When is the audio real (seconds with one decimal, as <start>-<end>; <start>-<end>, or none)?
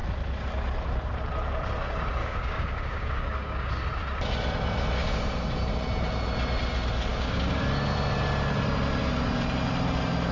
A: 0.0-2.2; 3.7-7.1; 7.6-10.3